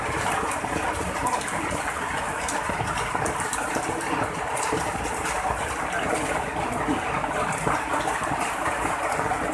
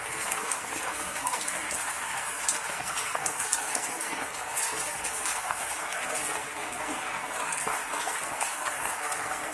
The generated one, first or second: second